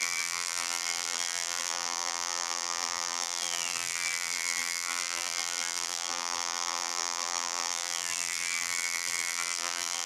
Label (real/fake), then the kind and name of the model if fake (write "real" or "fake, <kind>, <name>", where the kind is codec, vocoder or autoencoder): fake, vocoder, BigVGAN v2